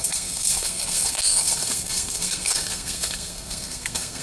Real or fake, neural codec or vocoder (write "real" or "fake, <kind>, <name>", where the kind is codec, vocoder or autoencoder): fake, codec, SNAC